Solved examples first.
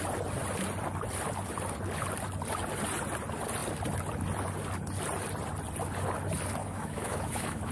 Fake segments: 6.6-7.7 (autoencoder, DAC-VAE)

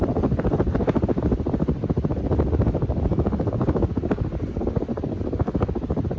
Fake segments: 3.1-3.9 (autoencoder, DAC-VAE)

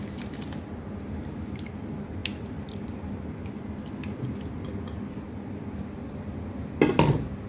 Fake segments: none

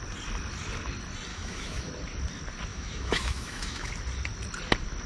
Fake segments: 1.3-1.9 (autoencoder, DAC-VAE); 2.7-3.9

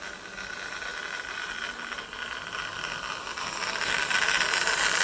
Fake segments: none

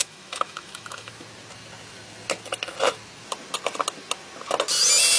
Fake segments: 0.0-1.1 (autoencoder, DAC-VAE)

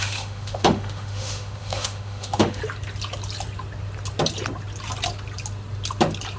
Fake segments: 0.0-2.6 (autoencoder, DAC-VAE)